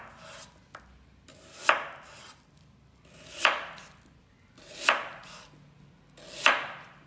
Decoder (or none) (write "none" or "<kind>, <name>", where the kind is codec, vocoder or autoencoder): none